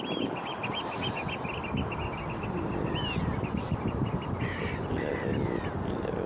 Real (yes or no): yes